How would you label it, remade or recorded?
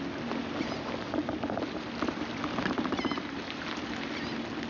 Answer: recorded